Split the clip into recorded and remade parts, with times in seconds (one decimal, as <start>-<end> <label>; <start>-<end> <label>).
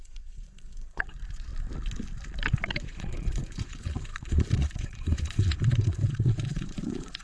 0.0-1.5 remade; 1.5-2.5 recorded; 2.5-7.2 remade